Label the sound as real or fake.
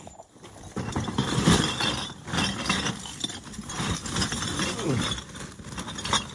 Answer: real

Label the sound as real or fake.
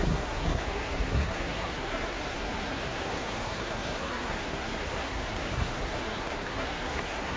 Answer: fake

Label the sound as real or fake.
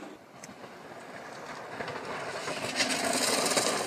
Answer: real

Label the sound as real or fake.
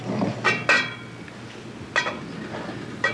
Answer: real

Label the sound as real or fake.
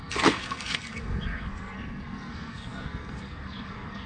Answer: fake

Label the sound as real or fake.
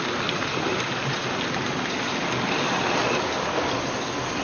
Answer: real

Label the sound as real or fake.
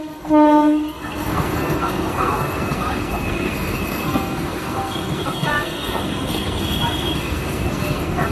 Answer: fake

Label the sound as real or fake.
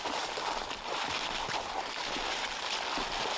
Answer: real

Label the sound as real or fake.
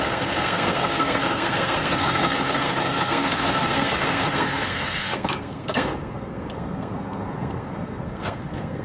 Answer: fake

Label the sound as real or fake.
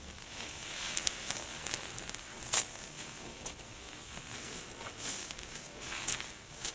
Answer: fake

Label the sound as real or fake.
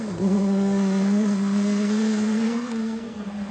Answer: fake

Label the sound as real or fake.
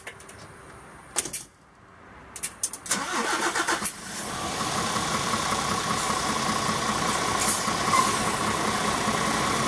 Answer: real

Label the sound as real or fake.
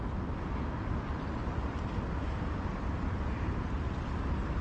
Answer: real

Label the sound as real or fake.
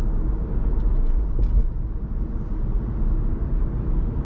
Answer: real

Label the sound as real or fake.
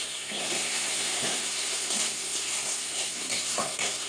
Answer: fake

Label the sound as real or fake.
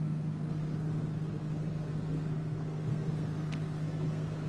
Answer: fake